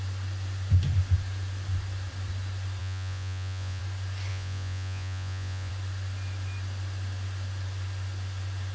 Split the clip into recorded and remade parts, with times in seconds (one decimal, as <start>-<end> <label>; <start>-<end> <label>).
0.0-2.8 recorded; 2.8-3.8 remade; 3.8-4.3 recorded; 4.3-5.7 remade; 5.7-8.7 recorded

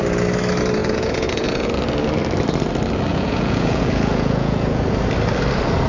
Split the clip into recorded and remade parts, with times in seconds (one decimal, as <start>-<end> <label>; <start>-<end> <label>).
0.0-0.8 recorded; 0.8-1.7 remade; 1.7-3.1 recorded; 3.1-4.8 remade; 4.8-5.9 recorded

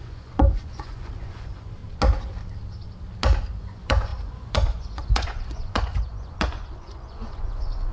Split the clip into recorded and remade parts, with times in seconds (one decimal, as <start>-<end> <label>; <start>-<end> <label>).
0.0-1.8 remade; 1.8-3.6 recorded; 3.6-7.9 remade

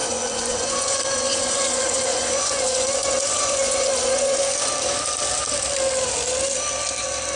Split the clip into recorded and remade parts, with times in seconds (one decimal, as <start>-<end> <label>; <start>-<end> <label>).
0.0-4.4 remade; 4.4-7.4 recorded